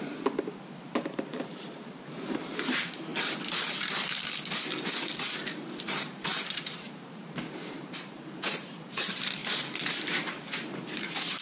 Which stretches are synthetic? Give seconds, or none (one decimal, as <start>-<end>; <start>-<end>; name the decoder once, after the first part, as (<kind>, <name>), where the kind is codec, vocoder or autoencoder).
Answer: 0.0-3.1 (vocoder, BigVGAN v2); 5.8-11.4